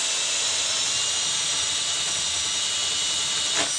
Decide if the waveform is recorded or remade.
recorded